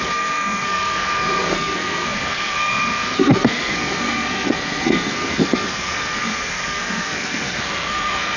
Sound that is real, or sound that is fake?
fake